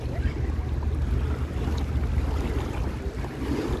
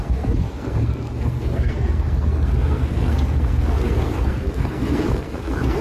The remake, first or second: second